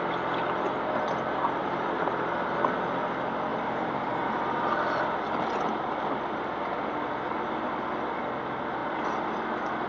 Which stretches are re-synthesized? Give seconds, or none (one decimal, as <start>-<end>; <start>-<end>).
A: 1.6-2.7; 3.5-6.2; 8.8-9.4